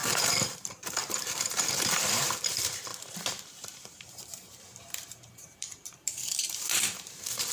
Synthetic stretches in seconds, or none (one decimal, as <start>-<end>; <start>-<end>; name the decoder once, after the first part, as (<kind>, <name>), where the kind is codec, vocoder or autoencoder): 0.0-7.5 (vocoder, BigVGAN v2)